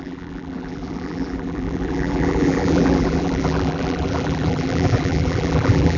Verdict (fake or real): fake